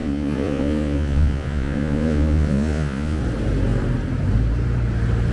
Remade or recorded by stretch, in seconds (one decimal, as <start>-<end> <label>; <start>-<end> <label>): 0.0-3.2 remade; 3.2-5.3 recorded

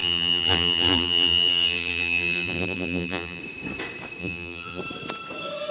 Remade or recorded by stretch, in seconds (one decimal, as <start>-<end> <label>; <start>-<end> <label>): 0.0-3.4 remade; 3.4-4.2 recorded; 4.2-4.8 remade; 4.8-5.7 recorded